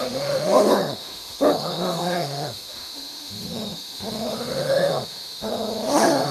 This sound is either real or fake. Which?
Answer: fake